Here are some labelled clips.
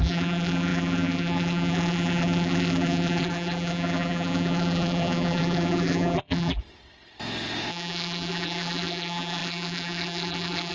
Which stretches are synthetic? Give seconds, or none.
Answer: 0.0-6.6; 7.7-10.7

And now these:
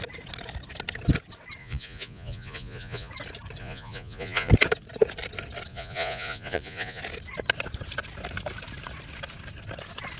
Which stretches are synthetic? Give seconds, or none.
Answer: 1.6-3.1; 3.6-4.5; 5.7-7.0

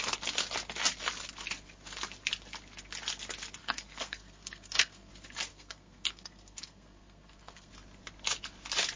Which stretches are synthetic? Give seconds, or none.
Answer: 3.6-5.1; 5.5-7.7

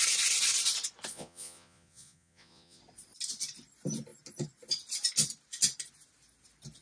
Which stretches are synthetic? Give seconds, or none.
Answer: 1.1-2.8

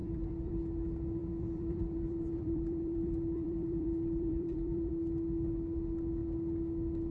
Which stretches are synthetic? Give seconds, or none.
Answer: 0.0-0.5; 1.2-4.9

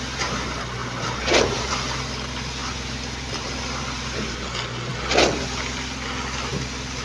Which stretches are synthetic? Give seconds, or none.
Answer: 0.8-1.7; 2.6-4.3